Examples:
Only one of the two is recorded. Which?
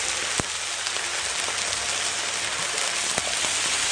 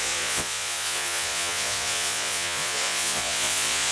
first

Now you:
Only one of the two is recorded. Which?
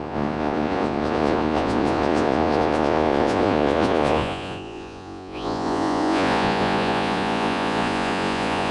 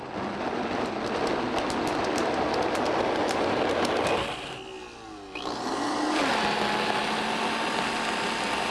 second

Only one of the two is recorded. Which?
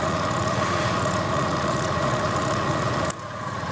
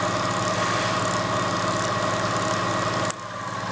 second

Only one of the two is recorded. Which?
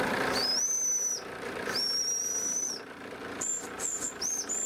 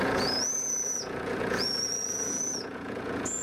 first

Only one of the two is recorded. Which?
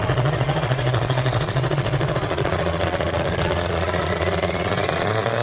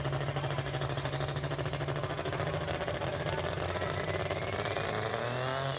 second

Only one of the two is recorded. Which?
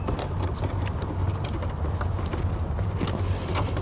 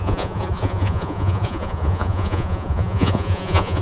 first